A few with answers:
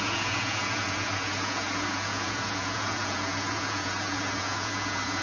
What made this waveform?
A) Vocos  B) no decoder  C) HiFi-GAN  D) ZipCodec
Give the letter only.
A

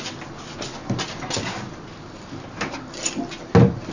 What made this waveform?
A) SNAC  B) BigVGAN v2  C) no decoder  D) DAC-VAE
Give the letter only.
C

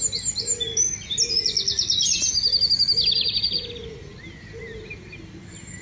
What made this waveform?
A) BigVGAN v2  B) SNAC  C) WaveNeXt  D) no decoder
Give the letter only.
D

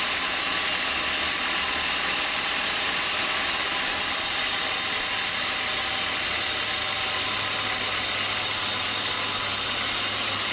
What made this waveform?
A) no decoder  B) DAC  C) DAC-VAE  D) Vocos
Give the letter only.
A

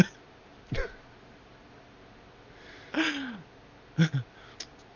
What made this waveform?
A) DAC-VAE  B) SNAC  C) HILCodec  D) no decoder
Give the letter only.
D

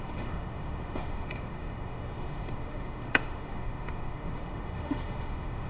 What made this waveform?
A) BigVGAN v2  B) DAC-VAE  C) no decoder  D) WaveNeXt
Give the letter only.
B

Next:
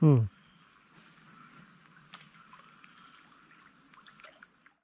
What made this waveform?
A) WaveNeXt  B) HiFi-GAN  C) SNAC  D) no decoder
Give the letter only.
D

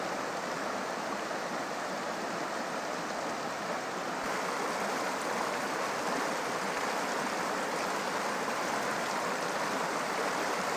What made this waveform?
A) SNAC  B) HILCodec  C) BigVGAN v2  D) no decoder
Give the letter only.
D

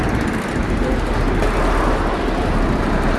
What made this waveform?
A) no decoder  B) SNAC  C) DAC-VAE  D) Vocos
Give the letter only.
A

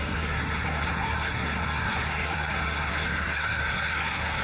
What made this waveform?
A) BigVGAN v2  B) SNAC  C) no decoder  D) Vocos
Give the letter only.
B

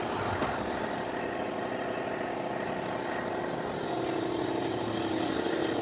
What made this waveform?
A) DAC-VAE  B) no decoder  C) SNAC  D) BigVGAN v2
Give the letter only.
B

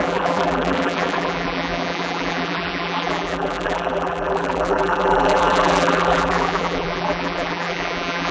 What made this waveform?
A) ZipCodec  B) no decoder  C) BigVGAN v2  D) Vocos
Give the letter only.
C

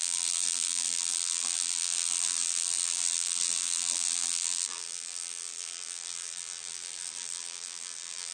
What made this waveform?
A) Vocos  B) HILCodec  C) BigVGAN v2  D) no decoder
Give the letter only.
C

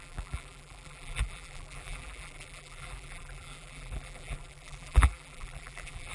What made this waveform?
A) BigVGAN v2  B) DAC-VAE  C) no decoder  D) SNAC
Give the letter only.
A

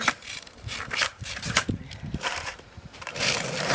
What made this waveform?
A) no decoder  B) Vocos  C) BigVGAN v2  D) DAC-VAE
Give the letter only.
C